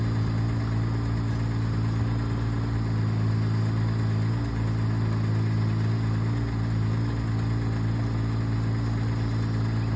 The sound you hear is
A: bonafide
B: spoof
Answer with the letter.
A